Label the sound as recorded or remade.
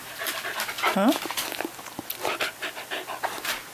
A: recorded